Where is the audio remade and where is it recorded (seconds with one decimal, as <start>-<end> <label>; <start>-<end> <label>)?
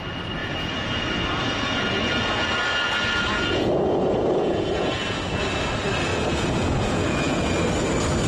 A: 0.0-0.4 recorded; 0.4-5.4 remade; 5.4-6.1 recorded; 6.1-7.5 remade; 7.5-8.3 recorded